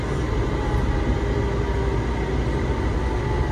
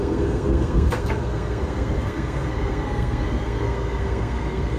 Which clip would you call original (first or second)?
first